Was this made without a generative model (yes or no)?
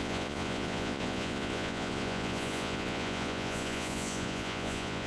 no